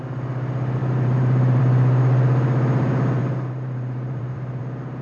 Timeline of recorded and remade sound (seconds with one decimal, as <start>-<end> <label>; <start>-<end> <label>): 0.0-0.8 recorded; 0.8-1.6 remade; 1.6-3.2 recorded; 3.2-4.6 remade; 4.6-5.0 recorded